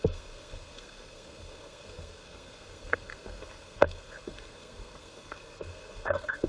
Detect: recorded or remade remade